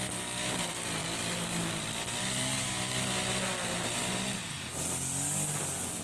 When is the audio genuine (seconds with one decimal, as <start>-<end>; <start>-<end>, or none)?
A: 0.0-6.0